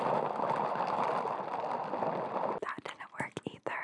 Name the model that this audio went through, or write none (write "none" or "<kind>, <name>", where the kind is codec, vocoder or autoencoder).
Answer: none